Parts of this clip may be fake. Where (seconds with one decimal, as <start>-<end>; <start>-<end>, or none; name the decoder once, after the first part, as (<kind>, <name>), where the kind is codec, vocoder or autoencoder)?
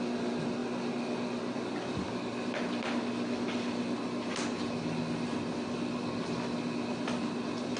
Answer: none